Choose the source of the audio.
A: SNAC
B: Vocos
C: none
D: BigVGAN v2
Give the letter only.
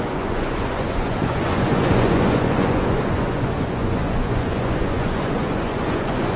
B